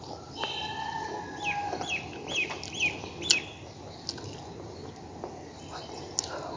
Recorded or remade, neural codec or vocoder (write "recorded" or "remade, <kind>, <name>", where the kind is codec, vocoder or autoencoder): recorded